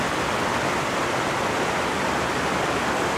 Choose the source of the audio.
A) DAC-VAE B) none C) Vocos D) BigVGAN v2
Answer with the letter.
B